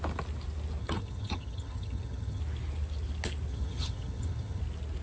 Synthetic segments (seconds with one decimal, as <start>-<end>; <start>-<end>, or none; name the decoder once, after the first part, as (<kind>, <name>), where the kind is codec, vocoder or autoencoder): 0.8-2.4 (vocoder, HiFi-GAN); 3.5-4.6